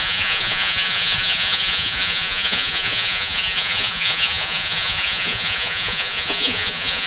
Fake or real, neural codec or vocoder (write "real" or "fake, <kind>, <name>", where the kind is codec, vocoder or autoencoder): fake, vocoder, Vocos